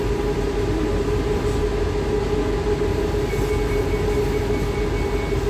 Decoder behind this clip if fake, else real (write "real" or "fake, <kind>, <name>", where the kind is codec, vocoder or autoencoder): real